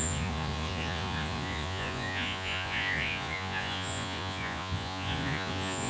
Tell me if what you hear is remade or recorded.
remade